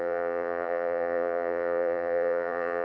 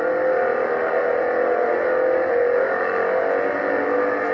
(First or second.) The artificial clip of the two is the first